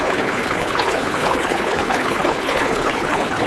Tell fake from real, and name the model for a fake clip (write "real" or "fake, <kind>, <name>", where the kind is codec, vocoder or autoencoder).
fake, codec, HILCodec